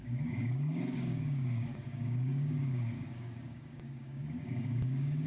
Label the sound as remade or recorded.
remade